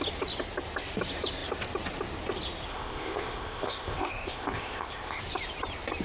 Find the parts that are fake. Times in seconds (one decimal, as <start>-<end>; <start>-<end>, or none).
2.7-5.2